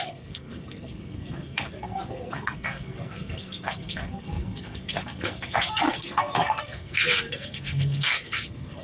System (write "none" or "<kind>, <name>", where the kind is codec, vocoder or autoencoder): codec, SNAC